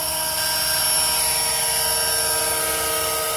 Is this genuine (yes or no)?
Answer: yes